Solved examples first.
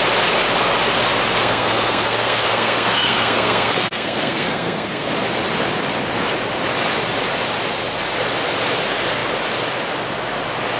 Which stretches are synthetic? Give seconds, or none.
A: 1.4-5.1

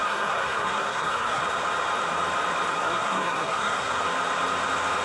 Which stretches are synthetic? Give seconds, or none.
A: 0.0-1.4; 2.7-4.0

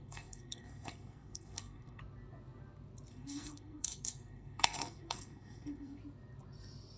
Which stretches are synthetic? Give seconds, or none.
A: 0.0-2.0; 3.1-6.0

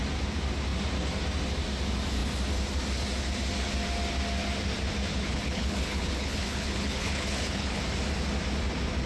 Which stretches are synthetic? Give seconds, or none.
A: 5.1-7.8

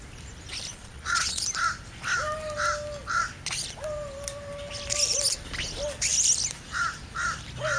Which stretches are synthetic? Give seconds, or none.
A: 0.7-1.4